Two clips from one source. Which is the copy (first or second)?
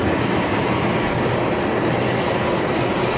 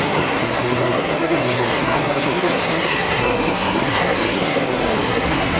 second